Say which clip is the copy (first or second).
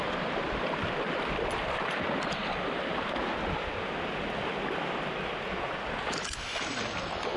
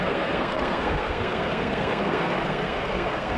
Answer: second